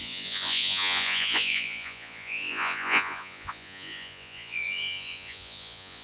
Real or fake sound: fake